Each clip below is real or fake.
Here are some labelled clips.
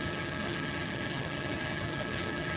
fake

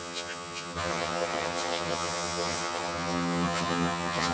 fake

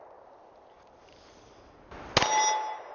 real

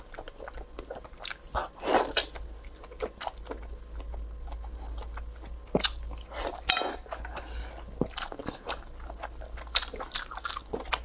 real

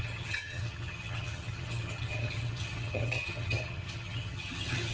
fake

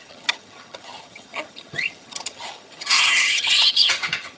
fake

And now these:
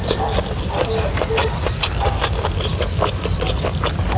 real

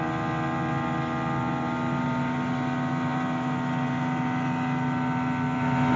real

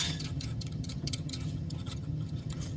fake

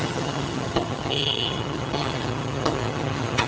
fake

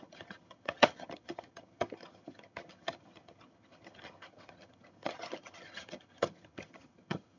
fake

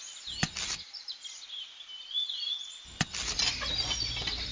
real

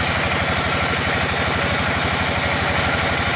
real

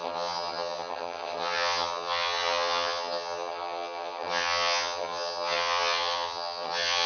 fake